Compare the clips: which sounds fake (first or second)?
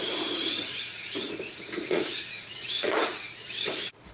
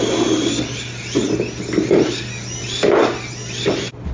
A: first